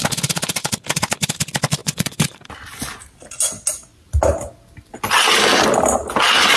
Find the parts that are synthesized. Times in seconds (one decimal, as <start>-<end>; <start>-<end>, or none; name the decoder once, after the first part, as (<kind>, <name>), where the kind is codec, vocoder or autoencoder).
1.8-2.4 (vocoder, Vocos)